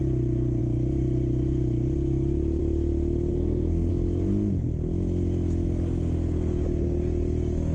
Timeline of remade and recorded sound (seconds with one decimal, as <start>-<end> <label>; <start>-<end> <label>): 0.0-3.3 recorded; 3.3-3.9 remade; 3.9-7.7 recorded